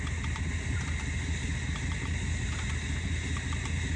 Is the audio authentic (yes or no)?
yes